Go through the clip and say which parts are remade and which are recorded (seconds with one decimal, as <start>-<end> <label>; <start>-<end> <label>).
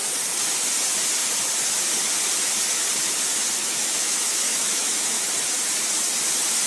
0.0-3.6 recorded; 3.6-5.2 remade; 5.2-6.7 recorded